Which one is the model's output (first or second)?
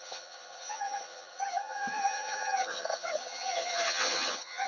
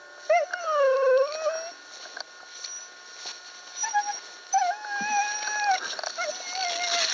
first